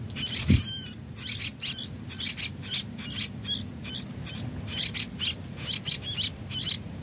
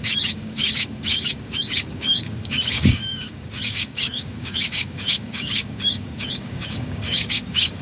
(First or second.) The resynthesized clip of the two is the second